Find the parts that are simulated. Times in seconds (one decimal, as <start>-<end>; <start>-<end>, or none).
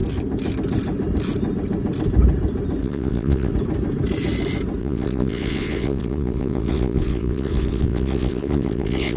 2.8-3.5; 4.8-9.2